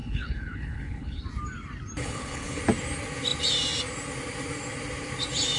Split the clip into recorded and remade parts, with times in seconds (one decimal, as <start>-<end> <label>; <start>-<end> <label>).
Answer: 0.0-1.2 remade; 1.2-2.0 recorded; 2.0-2.6 remade; 2.6-5.6 recorded